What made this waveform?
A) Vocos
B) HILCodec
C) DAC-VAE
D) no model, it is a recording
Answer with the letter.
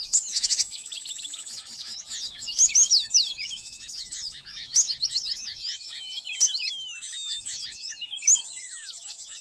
C